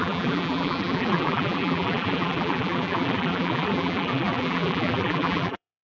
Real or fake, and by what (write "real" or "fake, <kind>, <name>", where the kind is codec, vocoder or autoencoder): fake, vocoder, BigVGAN v2